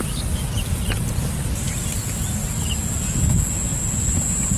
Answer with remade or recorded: recorded